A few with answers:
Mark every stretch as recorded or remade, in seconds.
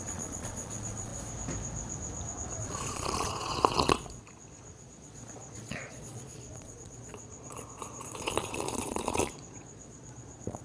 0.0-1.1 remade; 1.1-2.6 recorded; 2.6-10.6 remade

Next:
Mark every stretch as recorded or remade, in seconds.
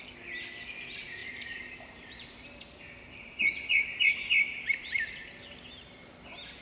0.0-1.2 recorded; 1.2-4.3 remade; 4.3-6.6 recorded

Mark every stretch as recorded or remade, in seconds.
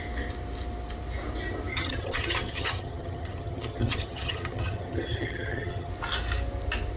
0.0-1.7 recorded; 1.7-5.9 remade; 5.9-7.0 recorded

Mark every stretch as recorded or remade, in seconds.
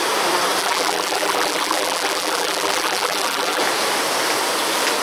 0.0-0.6 recorded; 0.6-3.6 remade; 3.6-5.0 recorded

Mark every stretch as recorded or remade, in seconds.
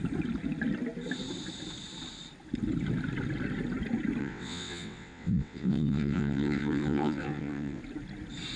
0.0-4.2 recorded; 4.2-7.8 remade; 7.8-8.6 recorded